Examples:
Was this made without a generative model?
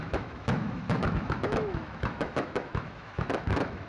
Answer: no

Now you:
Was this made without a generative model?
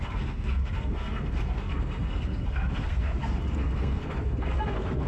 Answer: no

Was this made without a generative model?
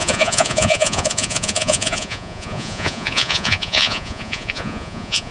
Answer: no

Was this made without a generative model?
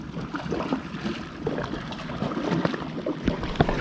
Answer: no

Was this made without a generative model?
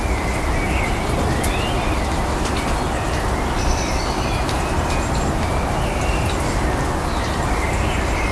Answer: yes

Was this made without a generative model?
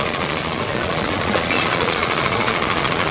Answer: no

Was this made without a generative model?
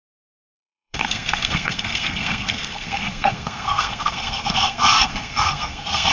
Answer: no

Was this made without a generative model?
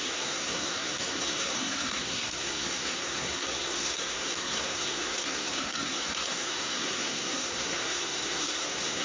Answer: no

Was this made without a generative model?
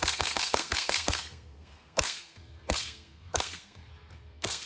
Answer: no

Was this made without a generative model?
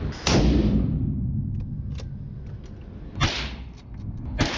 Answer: yes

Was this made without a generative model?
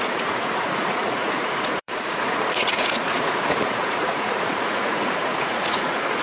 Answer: no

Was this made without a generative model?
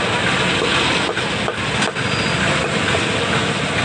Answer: yes